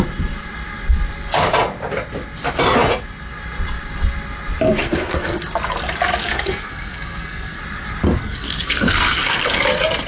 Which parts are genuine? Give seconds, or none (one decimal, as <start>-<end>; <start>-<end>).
0.0-4.8; 5.5-6.2; 7.6-8.2; 9.6-10.1